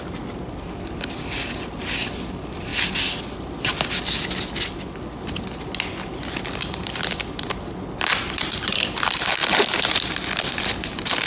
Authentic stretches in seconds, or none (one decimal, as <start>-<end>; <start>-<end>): 0.0-11.3